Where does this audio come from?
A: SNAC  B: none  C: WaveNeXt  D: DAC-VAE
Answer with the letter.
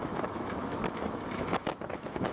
D